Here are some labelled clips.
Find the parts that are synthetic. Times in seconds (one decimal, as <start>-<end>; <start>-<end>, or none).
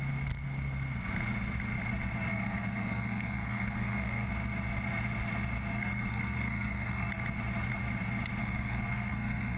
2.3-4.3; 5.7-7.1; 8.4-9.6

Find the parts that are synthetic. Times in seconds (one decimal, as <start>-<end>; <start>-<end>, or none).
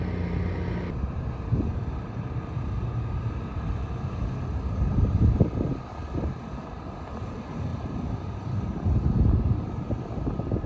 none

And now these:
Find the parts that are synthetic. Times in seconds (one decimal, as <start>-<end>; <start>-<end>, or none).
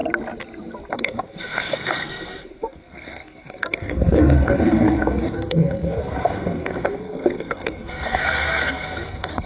0.9-9.5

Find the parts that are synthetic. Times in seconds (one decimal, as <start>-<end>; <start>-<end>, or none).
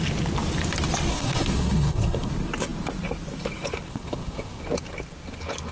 1.1-2.3; 3.9-4.6